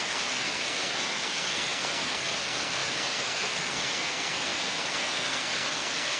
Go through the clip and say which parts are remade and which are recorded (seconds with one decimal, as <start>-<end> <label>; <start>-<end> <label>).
0.0-6.2 remade